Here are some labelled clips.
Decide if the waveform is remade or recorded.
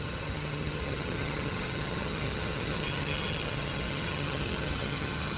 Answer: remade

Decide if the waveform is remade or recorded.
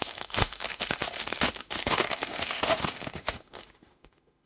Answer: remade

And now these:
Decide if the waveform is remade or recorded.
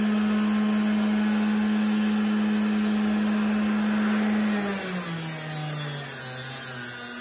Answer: recorded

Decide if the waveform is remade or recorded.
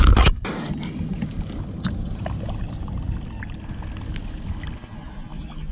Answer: recorded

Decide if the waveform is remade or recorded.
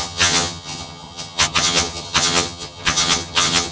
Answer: remade